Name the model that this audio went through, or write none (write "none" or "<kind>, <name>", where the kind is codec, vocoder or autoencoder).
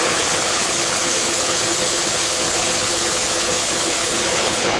codec, HILCodec